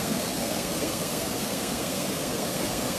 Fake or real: fake